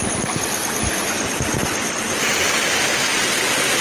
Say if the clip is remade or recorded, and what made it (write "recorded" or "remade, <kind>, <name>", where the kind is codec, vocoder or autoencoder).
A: recorded